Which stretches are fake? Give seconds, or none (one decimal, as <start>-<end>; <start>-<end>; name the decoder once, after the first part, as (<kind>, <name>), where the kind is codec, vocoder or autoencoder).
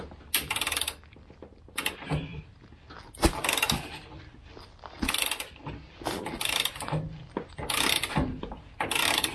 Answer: none